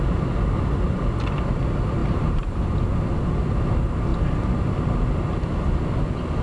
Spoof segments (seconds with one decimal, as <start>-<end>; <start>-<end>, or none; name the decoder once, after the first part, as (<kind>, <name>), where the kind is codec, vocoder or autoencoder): 2.0-2.6 (vocoder, BigVGAN v2)